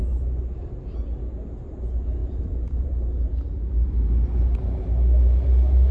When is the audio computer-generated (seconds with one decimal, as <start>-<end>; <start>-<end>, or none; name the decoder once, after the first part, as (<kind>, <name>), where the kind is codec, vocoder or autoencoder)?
2.2-4.8 (vocoder, BigVGAN v2)